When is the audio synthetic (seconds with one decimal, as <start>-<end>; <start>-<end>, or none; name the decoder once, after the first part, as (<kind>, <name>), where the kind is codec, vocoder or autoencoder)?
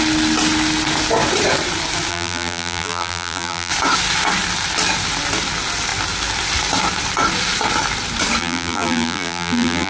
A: 2.1-3.7 (vocoder, BigVGAN v2); 8.4-9.9